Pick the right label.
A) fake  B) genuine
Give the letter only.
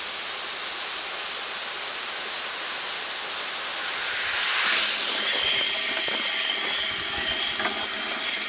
B